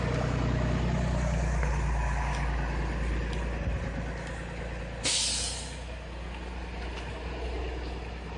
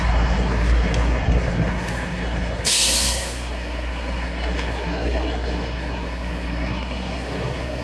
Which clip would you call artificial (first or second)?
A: second